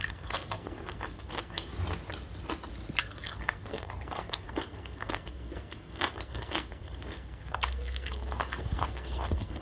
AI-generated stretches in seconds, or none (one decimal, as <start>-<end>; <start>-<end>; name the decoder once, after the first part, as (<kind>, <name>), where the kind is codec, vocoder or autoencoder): 0.0-1.7 (codec, SNAC); 3.0-9.6